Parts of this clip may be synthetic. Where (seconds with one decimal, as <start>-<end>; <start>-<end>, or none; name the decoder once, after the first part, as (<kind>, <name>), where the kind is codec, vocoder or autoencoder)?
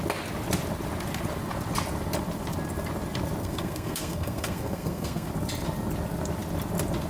3.4-5.3 (codec, SNAC)